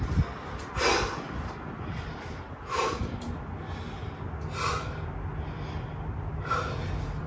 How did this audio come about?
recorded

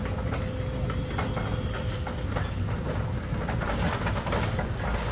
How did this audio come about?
recorded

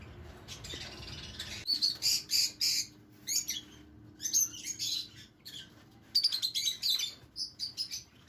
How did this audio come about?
recorded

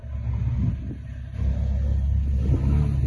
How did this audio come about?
recorded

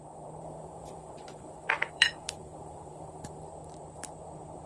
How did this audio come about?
remade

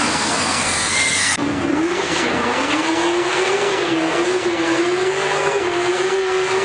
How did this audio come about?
remade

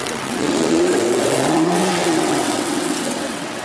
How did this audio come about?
remade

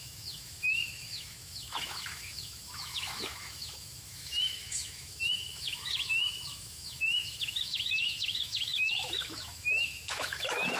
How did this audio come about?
remade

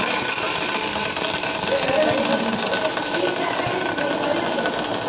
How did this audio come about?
recorded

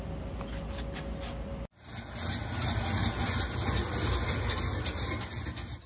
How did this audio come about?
recorded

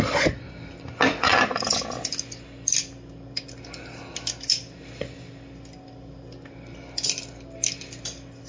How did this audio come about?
recorded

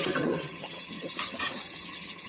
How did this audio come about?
remade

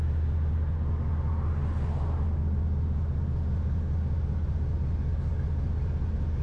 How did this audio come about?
recorded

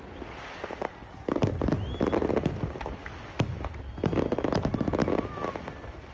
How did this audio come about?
recorded